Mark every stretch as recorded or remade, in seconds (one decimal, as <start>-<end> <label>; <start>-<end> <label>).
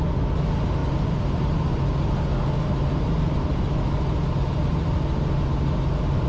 0.0-6.3 recorded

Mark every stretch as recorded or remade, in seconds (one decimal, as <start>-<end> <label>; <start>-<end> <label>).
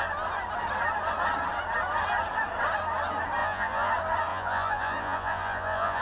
0.0-3.4 recorded; 3.4-3.9 remade; 3.9-4.3 recorded; 4.3-6.0 remade